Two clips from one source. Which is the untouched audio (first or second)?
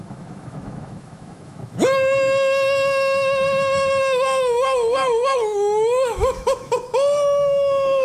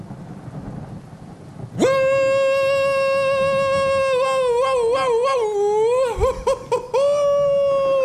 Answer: second